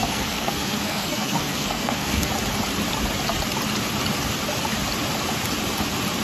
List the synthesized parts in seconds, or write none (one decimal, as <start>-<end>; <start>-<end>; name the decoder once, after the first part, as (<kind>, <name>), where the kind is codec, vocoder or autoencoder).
0.0-2.3 (codec, SNAC)